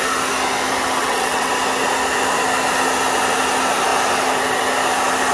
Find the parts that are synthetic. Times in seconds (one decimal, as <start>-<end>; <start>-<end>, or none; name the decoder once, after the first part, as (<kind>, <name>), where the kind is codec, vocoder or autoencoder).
1.0-1.5 (vocoder, WaveNeXt)